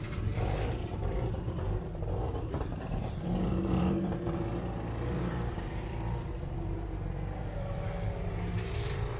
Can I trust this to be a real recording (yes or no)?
no